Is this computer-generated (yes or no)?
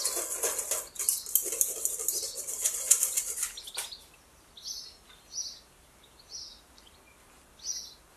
no